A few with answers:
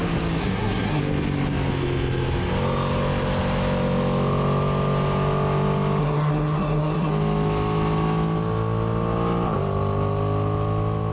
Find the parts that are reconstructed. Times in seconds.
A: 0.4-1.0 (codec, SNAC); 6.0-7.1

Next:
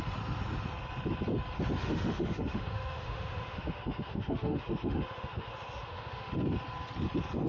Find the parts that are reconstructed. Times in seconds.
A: 1.8-6.3 (autoencoder, DAC-VAE)

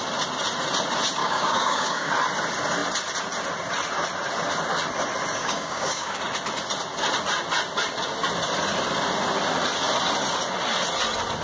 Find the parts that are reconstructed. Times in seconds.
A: 1.2-2.1 (codec, DAC); 5.4-6.2

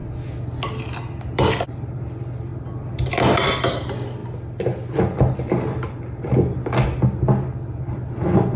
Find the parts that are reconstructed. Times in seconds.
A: none

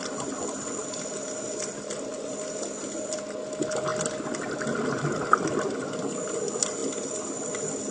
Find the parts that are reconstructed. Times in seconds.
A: none

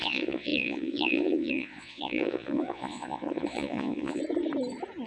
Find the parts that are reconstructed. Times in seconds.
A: 0.0-4.2 (vocoder, Vocos)